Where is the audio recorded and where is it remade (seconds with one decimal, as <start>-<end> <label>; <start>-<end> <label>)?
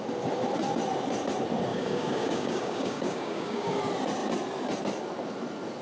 0.0-1.7 recorded; 1.7-3.8 remade; 3.8-5.8 recorded